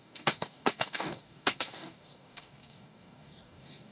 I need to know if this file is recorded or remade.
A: remade